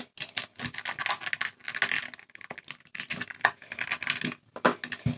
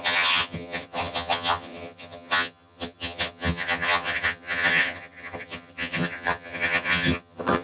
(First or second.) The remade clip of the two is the second